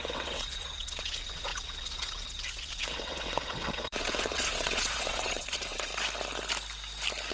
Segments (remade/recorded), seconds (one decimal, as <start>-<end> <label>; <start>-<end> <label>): 0.0-5.9 remade; 5.9-7.3 recorded